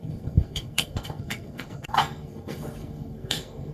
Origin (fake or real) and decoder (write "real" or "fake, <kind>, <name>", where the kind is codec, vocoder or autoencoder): fake, codec, SNAC